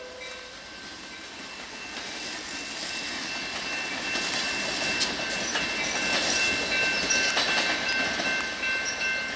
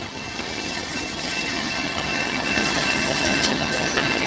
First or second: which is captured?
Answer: first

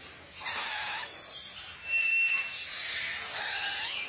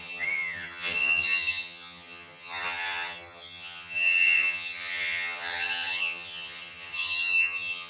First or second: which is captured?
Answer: first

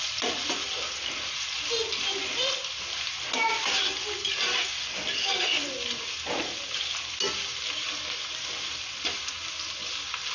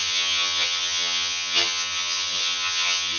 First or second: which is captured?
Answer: first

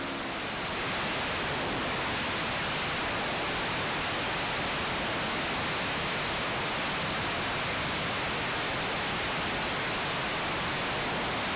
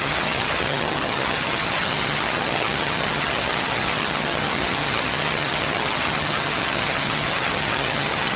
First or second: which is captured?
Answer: first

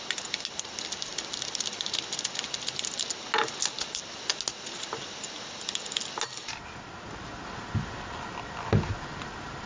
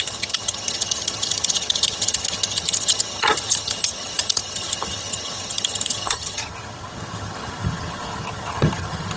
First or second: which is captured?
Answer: first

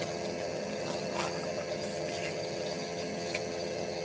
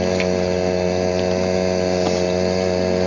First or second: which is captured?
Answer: second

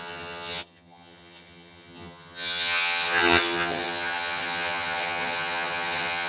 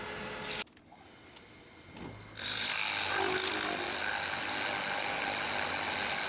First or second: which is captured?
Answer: second